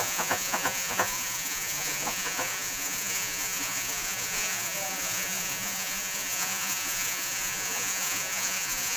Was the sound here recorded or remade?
remade